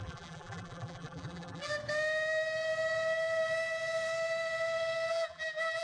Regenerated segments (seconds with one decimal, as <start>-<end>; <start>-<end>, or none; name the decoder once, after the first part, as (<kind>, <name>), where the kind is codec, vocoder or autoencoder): 0.0-1.7 (vocoder, BigVGAN v2); 5.1-5.8